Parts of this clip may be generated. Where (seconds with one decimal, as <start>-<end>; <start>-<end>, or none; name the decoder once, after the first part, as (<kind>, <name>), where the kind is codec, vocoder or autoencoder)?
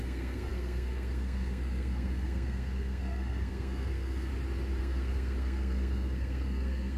0.0-4.3 (codec, SNAC); 4.8-7.0